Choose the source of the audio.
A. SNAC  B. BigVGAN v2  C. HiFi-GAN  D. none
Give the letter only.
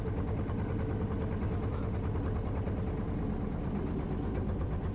D